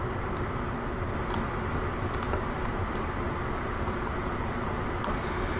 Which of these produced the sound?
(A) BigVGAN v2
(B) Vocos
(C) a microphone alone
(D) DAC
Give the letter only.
C